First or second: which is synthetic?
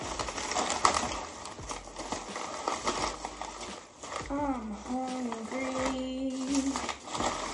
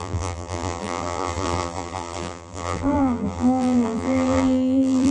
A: second